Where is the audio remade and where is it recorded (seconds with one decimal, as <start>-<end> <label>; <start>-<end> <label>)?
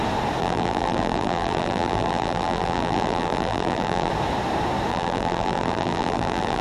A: 0.0-0.4 recorded; 0.4-4.1 remade; 4.1-4.9 recorded; 4.9-6.6 remade